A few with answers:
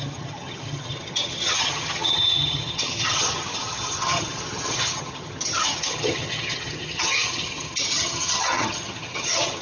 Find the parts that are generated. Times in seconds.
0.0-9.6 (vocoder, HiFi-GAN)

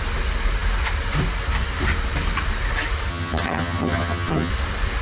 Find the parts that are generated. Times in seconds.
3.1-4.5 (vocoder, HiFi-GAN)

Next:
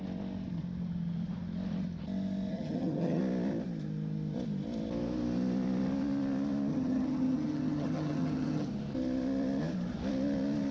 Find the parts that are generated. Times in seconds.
2.5-3.2 (vocoder, HiFi-GAN); 6.7-8.7